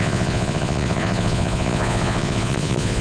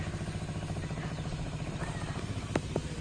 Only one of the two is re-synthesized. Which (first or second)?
first